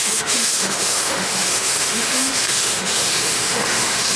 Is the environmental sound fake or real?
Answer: fake